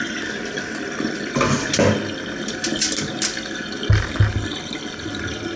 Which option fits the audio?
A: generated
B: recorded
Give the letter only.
B